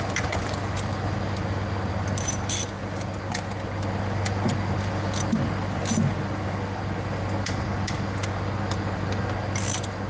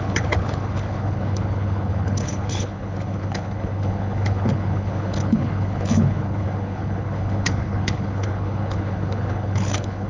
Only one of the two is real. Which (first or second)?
first